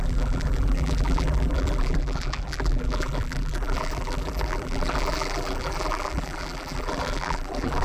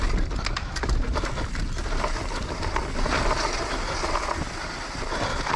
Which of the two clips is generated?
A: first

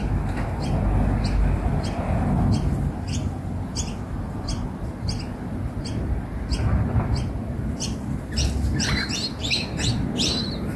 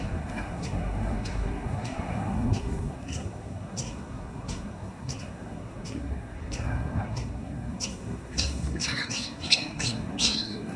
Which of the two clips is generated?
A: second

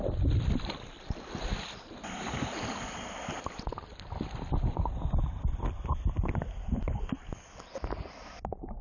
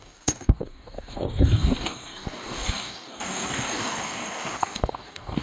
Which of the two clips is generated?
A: second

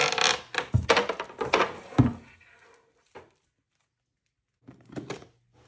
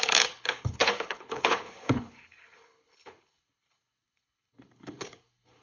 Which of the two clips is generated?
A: second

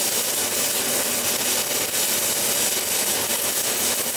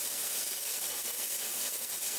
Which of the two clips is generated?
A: second